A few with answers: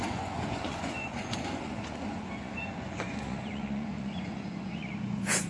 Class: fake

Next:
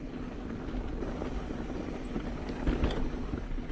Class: real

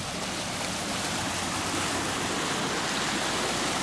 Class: real